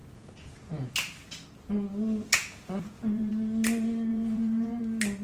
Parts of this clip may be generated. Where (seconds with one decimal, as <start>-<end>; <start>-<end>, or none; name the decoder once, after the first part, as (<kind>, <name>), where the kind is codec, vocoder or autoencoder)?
0.0-0.9 (vocoder, Vocos); 2.3-3.3; 4.1-4.8